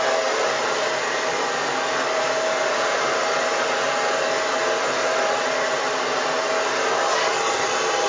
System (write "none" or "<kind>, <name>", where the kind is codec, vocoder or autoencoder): none